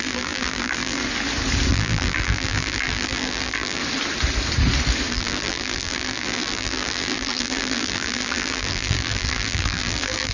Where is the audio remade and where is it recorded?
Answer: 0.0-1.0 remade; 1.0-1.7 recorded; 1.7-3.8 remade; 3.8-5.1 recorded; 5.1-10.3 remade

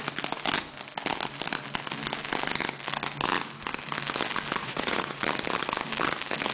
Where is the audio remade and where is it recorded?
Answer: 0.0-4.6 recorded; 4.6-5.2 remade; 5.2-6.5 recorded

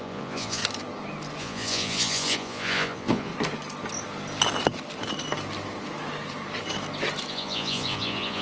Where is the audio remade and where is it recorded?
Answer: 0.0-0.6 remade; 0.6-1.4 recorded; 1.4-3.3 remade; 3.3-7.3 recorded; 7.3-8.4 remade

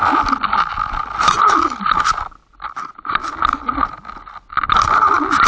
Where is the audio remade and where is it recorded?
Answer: 0.0-5.5 recorded